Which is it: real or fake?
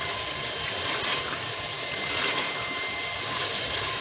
fake